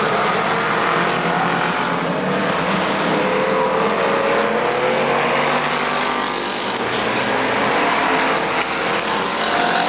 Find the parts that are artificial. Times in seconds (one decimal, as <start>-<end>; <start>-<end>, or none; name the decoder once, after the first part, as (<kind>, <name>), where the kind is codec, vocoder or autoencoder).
2.4-3.2 (codec, DAC); 6.5-7.2; 9.3-9.9